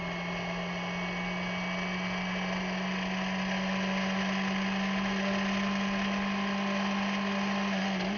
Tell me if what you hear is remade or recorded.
recorded